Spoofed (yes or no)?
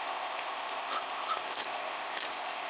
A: yes